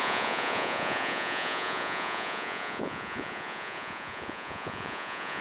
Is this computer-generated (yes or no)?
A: yes